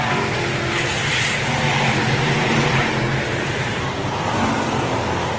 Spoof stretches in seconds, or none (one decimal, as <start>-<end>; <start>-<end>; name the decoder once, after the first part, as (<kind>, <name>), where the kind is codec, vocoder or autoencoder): 0.9-4.1 (vocoder, BigVGAN v2)